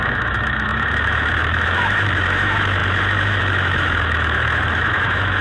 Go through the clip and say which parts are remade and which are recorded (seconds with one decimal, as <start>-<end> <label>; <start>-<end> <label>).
0.0-5.4 remade